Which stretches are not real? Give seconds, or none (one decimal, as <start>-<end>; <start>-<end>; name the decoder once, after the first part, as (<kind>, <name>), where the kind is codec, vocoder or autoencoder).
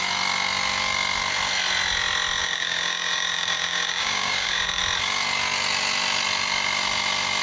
2.4-4.8 (codec, DAC)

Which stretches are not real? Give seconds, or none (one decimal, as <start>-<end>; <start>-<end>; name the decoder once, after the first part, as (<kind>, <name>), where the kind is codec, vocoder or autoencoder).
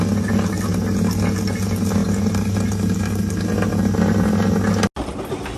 none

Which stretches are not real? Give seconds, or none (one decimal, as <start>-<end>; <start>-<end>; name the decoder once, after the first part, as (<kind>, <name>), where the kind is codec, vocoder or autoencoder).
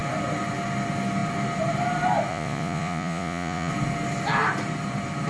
2.3-3.7 (vocoder, Vocos)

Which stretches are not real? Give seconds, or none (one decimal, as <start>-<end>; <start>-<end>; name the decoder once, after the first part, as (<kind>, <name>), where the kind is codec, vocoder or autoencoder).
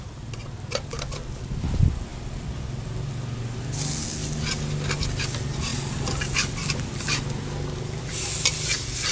none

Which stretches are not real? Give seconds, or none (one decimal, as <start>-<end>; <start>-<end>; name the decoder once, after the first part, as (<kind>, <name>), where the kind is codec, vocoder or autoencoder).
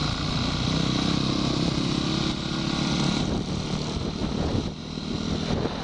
none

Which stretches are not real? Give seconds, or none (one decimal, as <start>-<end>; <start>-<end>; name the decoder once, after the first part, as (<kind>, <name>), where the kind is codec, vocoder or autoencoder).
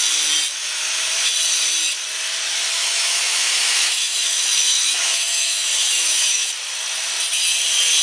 0.5-1.3 (autoencoder, DAC-VAE); 2.8-6.5